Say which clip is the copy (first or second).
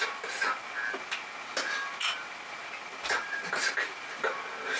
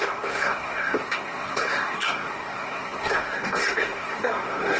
second